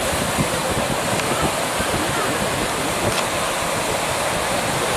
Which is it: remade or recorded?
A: remade